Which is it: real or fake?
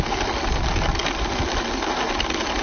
real